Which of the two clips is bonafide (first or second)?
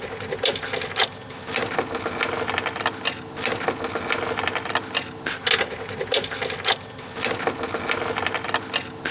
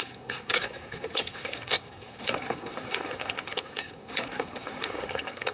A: first